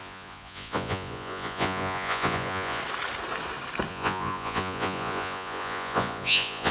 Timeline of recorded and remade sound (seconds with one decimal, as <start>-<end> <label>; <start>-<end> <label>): 0.0-2.8 remade; 2.8-3.9 recorded; 3.9-6.7 remade